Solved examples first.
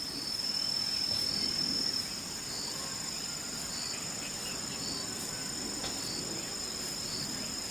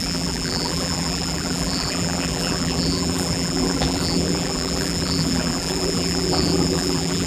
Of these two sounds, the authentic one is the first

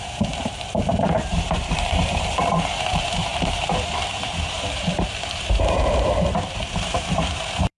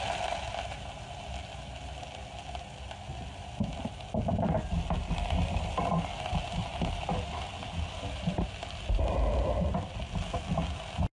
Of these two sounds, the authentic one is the second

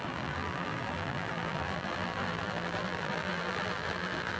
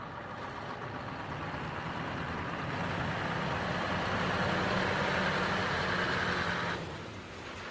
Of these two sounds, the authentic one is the second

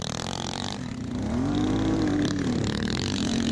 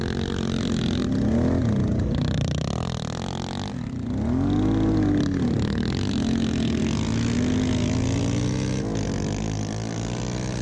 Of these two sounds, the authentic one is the second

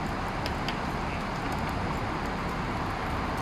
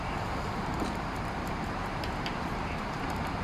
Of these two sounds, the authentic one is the first